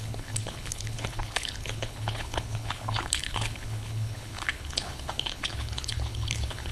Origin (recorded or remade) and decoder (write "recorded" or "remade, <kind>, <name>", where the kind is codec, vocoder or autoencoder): remade, codec, HILCodec